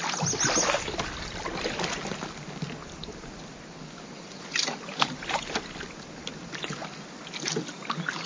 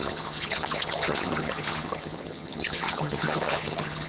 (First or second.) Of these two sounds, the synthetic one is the second